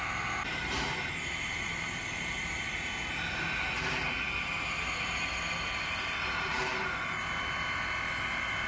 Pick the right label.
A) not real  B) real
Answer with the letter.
B